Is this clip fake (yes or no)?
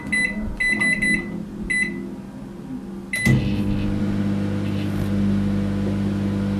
no